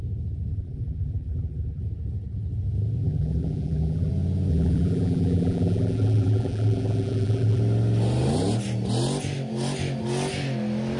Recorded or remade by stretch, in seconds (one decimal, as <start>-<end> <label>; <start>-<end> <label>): 0.0-0.5 recorded; 0.5-1.8 remade; 1.8-3.0 recorded; 3.0-4.1 remade; 4.1-4.5 recorded; 4.5-7.6 remade; 7.6-11.0 recorded